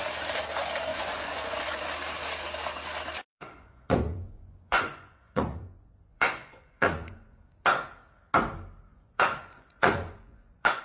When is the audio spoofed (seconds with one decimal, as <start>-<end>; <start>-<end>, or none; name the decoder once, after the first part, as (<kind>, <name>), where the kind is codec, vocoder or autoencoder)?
0.9-1.8 (vocoder, Vocos); 3.3-7.5; 8.9-10.8